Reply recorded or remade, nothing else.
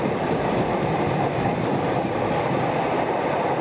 recorded